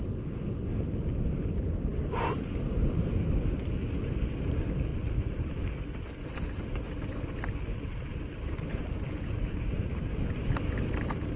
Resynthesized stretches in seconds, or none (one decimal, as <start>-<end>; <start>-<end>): 4.9-5.6; 8.1-10.0